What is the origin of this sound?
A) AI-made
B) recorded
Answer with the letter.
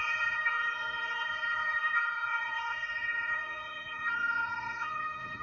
A